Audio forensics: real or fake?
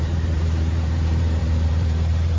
fake